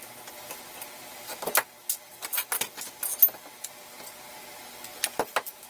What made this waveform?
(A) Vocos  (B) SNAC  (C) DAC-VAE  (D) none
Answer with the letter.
D